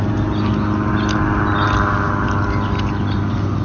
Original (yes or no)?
yes